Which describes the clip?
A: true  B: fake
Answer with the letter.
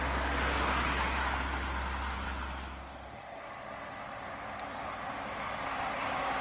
A